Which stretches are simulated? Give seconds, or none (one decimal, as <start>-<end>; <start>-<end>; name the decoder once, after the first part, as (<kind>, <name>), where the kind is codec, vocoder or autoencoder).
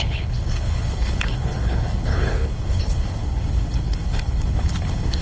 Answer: 0.0-5.2 (codec, HILCodec)